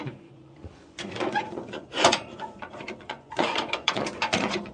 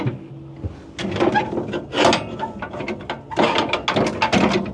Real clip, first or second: second